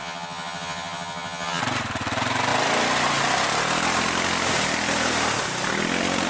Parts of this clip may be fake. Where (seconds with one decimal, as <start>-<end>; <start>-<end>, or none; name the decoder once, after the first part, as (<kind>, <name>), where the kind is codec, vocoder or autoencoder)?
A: 0.0-1.6 (vocoder, HiFi-GAN)